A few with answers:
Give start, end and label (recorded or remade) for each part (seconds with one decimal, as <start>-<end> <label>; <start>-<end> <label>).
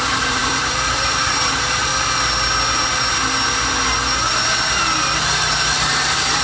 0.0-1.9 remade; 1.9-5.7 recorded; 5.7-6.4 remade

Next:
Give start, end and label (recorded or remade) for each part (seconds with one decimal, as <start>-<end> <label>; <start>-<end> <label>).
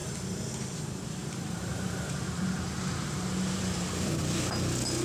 0.0-1.2 recorded; 1.2-4.2 remade; 4.2-5.0 recorded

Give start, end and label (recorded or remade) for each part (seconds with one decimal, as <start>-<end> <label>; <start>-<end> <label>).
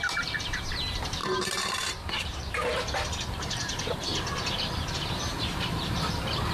0.0-4.1 remade; 4.1-5.1 recorded; 5.1-6.5 remade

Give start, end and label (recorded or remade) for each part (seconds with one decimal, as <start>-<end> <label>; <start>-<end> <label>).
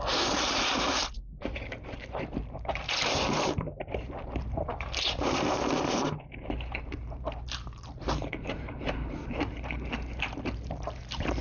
0.0-11.4 remade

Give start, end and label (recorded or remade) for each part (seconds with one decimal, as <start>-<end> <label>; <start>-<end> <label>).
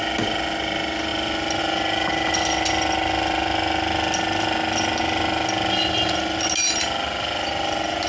0.0-8.1 recorded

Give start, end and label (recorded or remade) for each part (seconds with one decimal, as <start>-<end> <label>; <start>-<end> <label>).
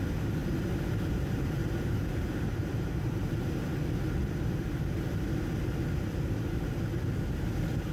0.0-1.6 recorded; 1.6-3.9 remade; 3.9-7.9 recorded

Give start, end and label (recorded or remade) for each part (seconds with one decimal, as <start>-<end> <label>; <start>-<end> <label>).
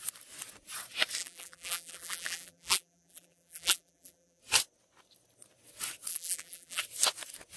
0.0-1.2 recorded; 1.2-4.4 remade; 4.4-6.1 recorded; 6.1-6.8 remade; 6.8-7.6 recorded